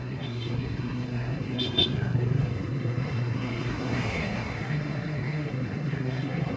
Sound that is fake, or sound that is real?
fake